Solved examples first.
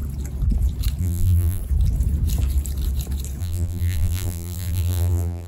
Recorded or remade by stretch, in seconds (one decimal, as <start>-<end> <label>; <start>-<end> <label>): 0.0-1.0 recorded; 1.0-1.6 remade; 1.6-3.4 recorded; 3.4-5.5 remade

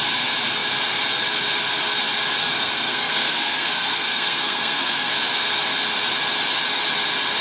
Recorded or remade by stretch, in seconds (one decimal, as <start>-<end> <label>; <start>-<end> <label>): 0.0-2.4 recorded; 2.4-5.1 remade; 5.1-7.4 recorded

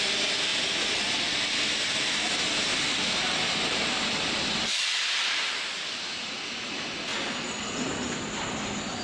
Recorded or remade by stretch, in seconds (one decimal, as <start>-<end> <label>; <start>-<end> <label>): 0.0-2.7 recorded; 2.7-6.3 remade; 6.3-9.0 recorded

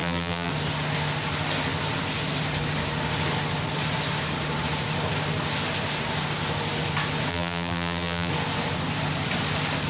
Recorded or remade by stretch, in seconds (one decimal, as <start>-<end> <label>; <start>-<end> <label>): 0.0-0.5 remade; 0.5-7.3 recorded; 7.3-8.3 remade; 8.3-9.9 recorded

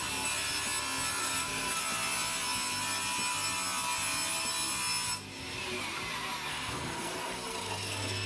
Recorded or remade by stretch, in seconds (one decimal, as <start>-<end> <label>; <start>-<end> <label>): 0.0-1.2 recorded; 1.2-1.8 remade; 1.8-6.5 recorded; 6.5-8.3 remade